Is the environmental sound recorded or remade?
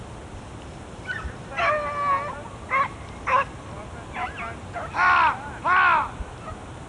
recorded